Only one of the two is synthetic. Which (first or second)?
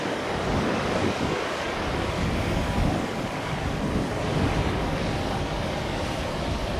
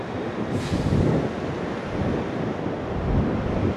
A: first